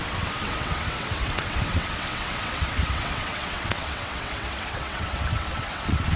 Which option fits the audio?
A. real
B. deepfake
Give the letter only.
B